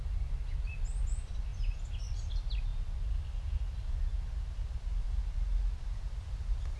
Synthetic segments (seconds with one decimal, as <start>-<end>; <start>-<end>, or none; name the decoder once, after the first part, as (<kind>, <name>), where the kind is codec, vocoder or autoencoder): none